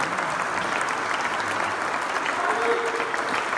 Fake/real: real